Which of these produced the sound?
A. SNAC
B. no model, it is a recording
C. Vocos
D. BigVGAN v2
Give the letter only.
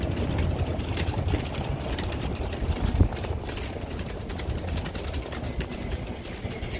D